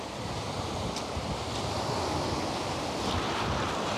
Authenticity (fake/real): real